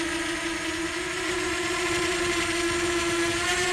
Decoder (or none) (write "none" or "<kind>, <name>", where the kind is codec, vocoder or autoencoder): none